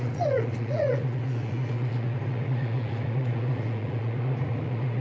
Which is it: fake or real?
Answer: fake